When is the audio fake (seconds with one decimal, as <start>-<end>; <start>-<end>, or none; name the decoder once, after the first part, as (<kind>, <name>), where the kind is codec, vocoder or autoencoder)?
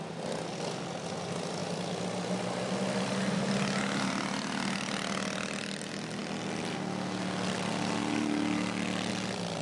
none